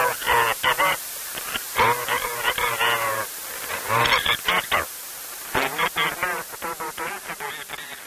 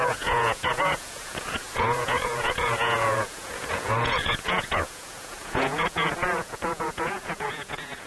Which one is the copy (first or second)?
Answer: second